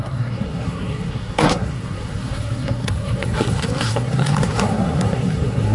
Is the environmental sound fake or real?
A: fake